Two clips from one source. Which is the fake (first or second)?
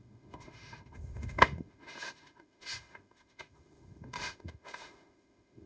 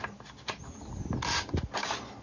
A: first